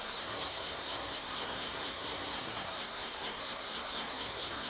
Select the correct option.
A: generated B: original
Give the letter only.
A